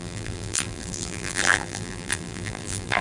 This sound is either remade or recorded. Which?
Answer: remade